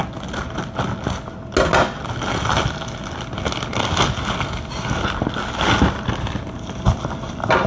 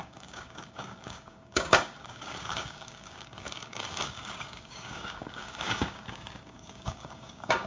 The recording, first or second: first